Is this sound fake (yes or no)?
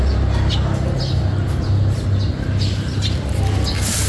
no